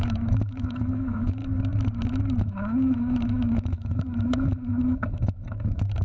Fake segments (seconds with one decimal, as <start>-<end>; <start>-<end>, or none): 0.0-1.4; 2.4-6.0